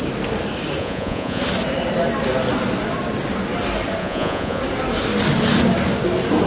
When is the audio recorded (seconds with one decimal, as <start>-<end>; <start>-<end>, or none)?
0.0-0.8; 1.4-4.0; 4.6-6.5